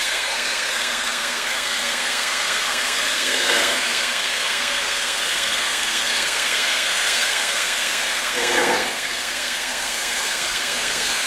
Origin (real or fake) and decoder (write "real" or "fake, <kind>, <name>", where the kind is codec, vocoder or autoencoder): fake, codec, SNAC